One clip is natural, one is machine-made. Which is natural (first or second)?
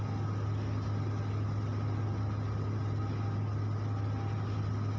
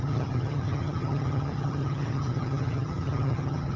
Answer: first